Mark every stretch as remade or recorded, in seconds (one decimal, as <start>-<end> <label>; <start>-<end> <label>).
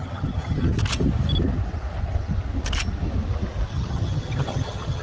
0.0-0.7 remade; 0.7-3.7 recorded; 3.7-5.0 remade